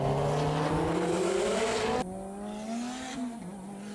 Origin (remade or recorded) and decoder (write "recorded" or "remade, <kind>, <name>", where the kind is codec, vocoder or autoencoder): recorded